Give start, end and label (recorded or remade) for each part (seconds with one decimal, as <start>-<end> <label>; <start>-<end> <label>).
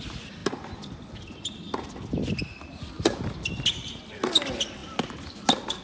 0.0-5.8 recorded